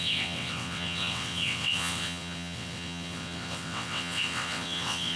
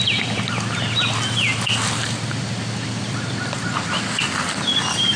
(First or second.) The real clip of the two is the second